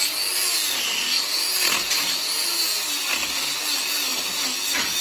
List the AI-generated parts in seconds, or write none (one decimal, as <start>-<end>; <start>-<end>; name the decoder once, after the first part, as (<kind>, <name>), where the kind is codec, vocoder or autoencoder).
none

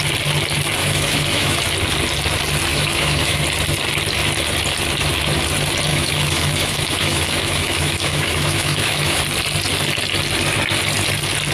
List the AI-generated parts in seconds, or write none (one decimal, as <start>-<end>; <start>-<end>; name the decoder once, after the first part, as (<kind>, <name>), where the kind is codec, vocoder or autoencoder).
0.8-1.6 (autoencoder, DAC-VAE); 2.7-3.4; 5.9-9.2

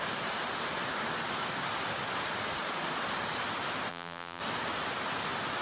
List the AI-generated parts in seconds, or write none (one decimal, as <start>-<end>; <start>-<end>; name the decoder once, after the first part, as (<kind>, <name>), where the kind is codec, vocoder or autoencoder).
3.9-4.4 (vocoder, BigVGAN v2)

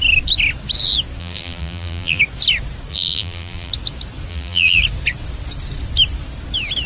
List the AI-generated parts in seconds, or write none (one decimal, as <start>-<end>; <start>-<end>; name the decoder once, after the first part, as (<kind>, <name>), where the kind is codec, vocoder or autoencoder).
1.2-2.2 (vocoder, BigVGAN v2); 2.9-3.7; 4.3-4.8